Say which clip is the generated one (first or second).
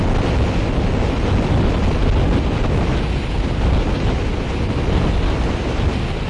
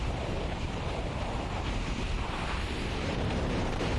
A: second